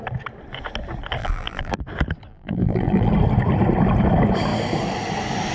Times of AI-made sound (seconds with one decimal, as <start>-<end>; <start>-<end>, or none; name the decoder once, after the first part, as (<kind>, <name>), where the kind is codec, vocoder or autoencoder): 1.2-1.7 (vocoder, BigVGAN v2); 2.3-3.1